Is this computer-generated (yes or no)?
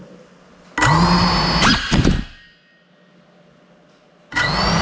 no